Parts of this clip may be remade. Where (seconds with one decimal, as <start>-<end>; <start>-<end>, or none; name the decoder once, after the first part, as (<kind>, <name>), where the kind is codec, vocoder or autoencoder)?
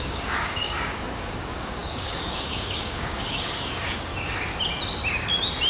0.0-4.1 (codec, DAC)